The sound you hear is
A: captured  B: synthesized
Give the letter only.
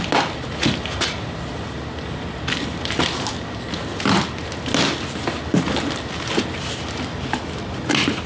A